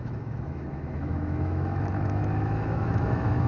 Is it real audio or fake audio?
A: fake